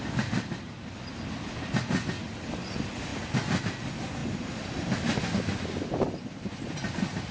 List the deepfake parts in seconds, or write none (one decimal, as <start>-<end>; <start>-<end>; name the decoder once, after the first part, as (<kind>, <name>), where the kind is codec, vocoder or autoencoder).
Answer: none